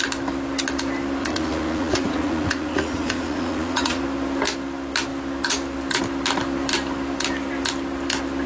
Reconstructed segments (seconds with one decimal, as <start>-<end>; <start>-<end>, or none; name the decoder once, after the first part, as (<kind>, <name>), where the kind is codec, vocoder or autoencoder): 1.2-4.0 (vocoder, Vocos)